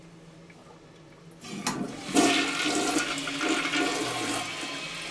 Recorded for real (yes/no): yes